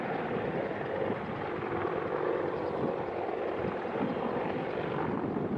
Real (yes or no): no